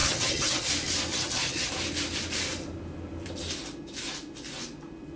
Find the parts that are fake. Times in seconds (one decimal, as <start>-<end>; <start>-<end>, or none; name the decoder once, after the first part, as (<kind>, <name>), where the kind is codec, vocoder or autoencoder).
0.0-0.7 (vocoder, HiFi-GAN); 1.1-1.7